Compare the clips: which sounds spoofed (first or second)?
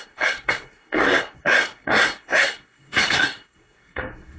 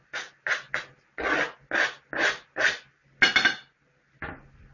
first